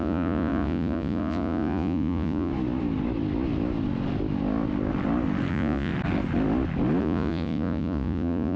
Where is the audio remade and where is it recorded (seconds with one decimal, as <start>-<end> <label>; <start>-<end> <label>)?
0.0-2.5 remade; 2.5-5.5 recorded; 5.5-5.9 remade; 5.9-7.0 recorded; 7.0-8.6 remade